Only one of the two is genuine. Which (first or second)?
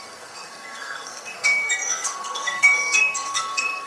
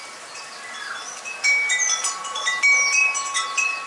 second